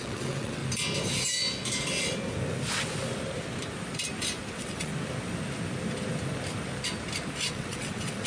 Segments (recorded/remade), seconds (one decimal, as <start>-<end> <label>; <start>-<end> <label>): 0.0-0.6 remade; 0.6-4.5 recorded; 4.5-4.9 remade; 4.9-7.5 recorded; 7.5-8.3 remade